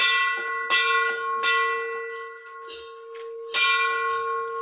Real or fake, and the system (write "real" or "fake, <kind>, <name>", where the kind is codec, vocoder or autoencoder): real